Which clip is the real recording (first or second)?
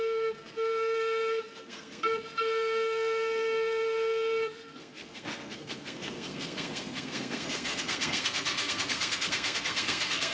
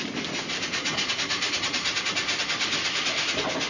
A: second